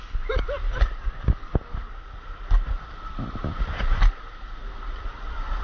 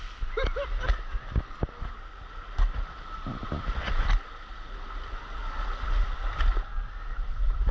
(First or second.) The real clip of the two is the second